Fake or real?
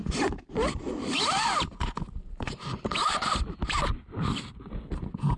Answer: real